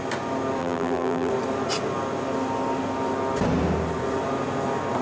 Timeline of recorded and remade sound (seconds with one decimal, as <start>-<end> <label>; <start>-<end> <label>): 0.0-0.6 recorded; 0.6-1.3 remade; 1.3-5.0 recorded